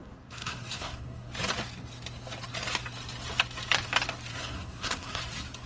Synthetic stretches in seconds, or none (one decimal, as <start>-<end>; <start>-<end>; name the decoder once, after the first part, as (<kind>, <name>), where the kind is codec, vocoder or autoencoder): 0.0-1.3 (codec, SNAC); 4.3-5.2